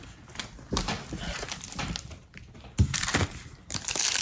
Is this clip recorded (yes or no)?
yes